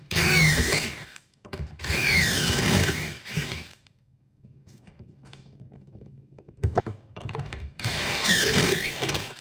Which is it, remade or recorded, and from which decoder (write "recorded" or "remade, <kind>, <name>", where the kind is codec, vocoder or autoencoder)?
remade, codec, DAC